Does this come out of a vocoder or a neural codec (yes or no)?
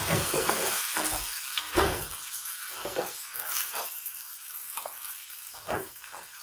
yes